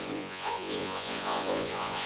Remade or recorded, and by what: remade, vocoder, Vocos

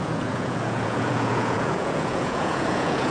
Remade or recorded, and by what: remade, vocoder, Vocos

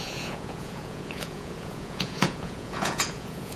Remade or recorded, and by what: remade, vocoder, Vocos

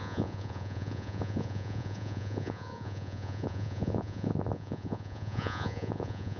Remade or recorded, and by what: remade, vocoder, Vocos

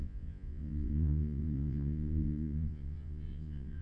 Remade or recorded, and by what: remade, vocoder, Vocos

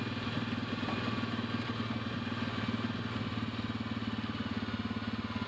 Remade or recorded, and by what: recorded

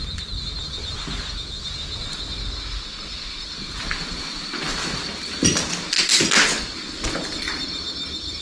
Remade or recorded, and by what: recorded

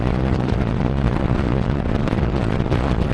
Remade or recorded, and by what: remade, vocoder, Vocos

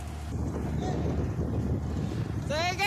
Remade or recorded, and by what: recorded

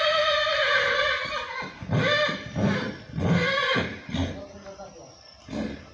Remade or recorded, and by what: recorded